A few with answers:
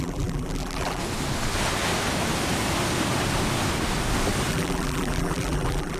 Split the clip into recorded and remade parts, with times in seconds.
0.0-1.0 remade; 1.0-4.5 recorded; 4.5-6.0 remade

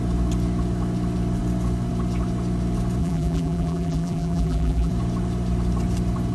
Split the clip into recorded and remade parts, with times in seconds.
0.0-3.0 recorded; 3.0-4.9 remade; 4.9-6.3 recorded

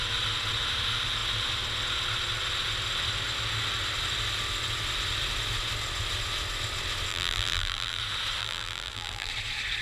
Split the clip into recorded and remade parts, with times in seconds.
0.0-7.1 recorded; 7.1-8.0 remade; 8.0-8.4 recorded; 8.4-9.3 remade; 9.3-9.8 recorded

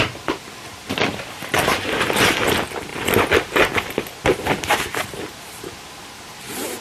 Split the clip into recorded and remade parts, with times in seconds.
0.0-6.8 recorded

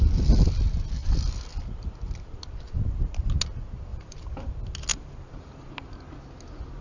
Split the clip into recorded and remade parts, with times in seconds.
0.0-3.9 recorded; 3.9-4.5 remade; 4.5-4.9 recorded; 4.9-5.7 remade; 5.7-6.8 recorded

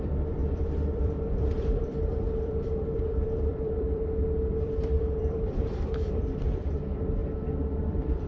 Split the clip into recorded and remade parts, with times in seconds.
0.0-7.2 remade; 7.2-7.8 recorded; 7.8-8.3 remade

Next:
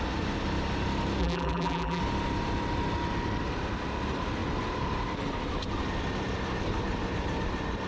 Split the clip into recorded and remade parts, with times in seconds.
0.0-1.2 recorded; 1.2-2.0 remade; 2.0-7.9 recorded